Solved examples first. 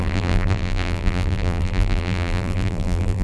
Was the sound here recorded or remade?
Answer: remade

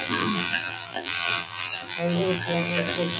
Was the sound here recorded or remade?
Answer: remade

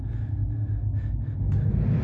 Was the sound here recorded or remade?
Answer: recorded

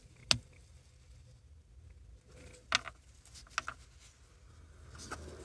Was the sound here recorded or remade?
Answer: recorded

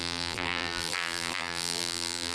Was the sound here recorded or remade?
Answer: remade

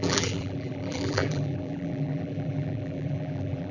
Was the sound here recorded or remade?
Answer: remade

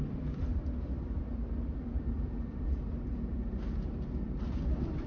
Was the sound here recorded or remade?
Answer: remade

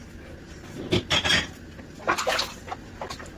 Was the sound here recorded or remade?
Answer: recorded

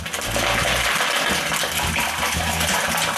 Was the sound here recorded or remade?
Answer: remade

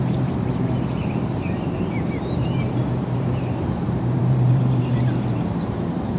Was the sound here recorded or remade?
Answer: remade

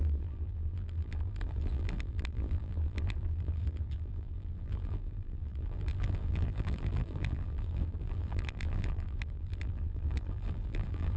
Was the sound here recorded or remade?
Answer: remade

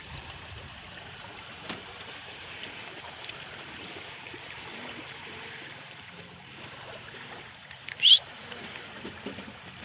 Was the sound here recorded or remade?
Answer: remade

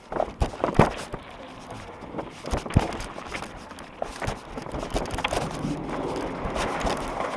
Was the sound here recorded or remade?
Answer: recorded